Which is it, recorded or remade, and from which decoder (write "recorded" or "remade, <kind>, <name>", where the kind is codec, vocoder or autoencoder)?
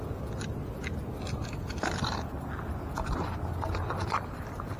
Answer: recorded